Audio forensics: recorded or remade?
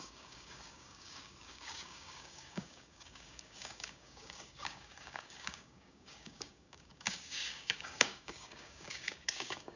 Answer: remade